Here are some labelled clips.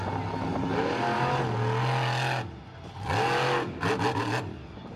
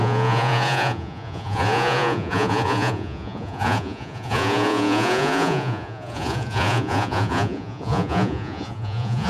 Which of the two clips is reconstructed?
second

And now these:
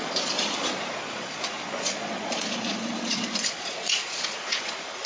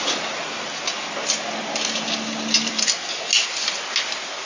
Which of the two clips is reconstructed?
first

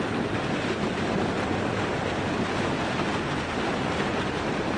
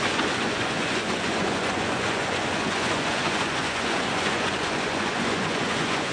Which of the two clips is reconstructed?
second